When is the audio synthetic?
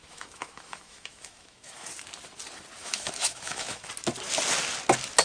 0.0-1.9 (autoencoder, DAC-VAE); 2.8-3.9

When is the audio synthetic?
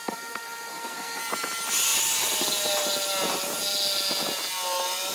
0.0-1.2 (codec, SNAC)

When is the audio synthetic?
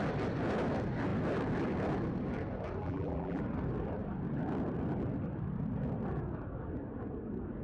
2.8-3.4 (vocoder, BigVGAN v2)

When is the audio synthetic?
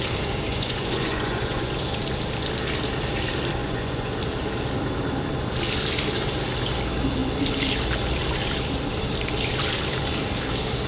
0.5-1.7 (vocoder, Vocos); 3.6-4.2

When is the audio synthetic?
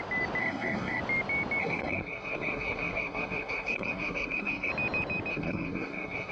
0.4-1.0 (codec, SNAC); 1.6-4.7; 5.3-6.3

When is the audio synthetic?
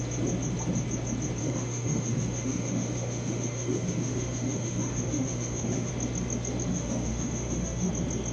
1.4-5.9 (autoencoder, DAC-VAE); 6.7-7.9